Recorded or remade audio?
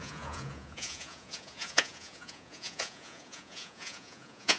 remade